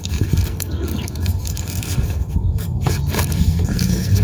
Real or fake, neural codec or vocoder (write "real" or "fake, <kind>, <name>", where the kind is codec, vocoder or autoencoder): fake, codec, SNAC